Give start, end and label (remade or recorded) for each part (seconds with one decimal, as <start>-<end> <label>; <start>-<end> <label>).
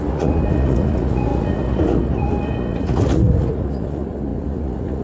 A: 0.0-5.0 remade